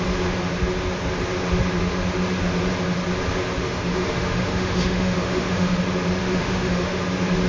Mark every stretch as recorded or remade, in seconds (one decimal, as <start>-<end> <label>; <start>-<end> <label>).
0.0-3.6 recorded; 3.6-5.8 remade; 5.8-6.2 recorded; 6.2-7.0 remade; 7.0-7.5 recorded